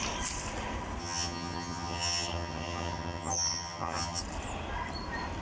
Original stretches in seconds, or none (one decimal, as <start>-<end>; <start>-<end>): 0.0-1.0; 4.2-5.4